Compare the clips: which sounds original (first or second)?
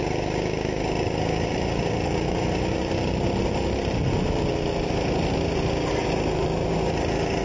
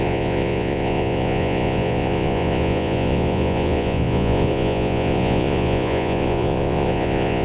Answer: first